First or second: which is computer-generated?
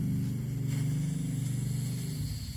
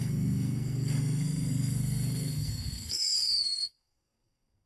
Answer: second